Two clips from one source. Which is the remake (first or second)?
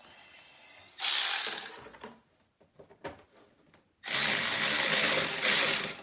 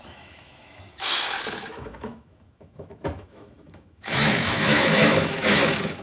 second